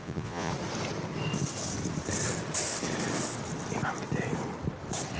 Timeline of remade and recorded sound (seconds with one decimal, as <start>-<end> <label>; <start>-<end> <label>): 0.0-0.5 remade; 0.5-5.2 recorded